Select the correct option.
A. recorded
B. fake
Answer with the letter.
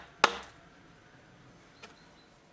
A